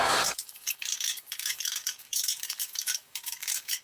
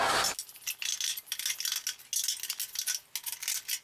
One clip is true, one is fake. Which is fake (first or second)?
first